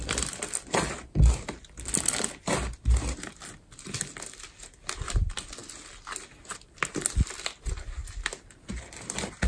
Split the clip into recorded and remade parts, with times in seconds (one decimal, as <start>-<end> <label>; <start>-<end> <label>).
0.0-9.5 recorded